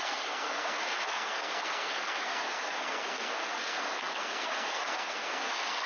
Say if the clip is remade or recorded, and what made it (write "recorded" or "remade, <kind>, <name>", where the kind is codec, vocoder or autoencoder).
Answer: remade, codec, SNAC